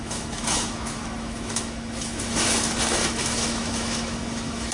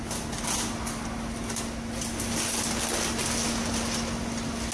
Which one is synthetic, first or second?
first